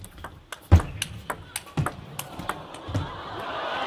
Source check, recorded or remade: recorded